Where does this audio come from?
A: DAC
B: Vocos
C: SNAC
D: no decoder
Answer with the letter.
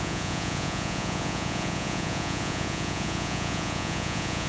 B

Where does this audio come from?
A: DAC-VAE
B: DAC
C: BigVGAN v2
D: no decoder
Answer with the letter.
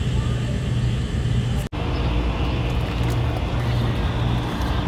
D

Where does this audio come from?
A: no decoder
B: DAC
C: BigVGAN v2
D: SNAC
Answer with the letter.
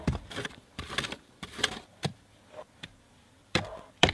C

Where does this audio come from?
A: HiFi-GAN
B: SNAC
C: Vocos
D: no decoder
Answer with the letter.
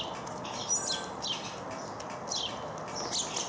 D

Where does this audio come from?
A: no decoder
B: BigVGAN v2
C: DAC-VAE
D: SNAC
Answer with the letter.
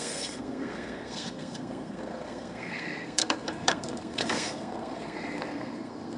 D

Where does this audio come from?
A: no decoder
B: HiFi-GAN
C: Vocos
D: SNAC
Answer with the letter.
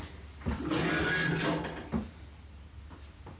A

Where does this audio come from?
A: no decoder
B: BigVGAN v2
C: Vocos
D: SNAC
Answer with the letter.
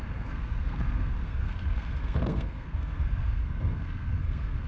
D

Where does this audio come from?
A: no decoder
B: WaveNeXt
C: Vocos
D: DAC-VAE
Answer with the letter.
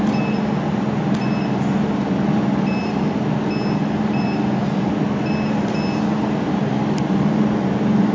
A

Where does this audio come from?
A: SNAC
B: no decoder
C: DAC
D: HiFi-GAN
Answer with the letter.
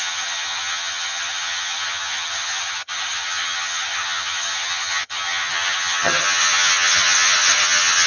D